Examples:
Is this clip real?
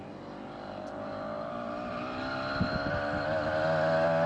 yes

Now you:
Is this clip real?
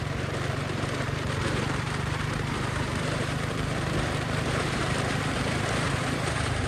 no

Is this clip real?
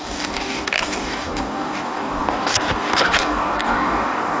no